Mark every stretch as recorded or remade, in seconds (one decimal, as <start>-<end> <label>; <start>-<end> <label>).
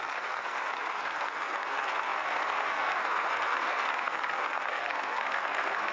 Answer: 0.0-5.9 remade